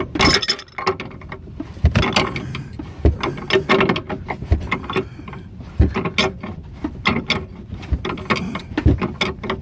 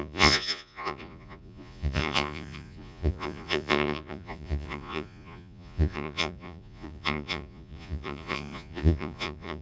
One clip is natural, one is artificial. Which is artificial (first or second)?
second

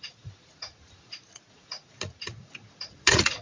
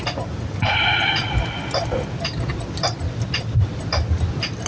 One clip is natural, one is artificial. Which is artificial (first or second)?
first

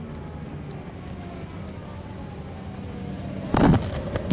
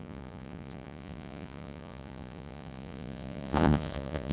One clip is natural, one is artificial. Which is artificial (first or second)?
second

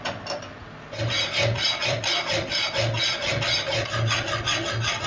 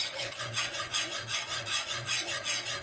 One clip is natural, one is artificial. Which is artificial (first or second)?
second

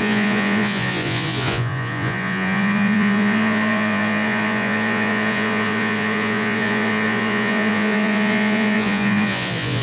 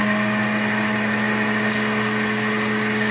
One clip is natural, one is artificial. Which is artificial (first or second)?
first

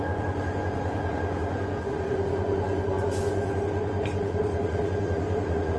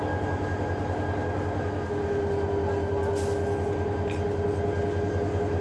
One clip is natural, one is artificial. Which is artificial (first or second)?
first